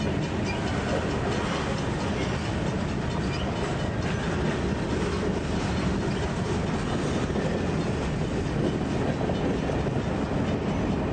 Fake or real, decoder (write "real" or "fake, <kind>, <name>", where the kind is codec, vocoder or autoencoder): real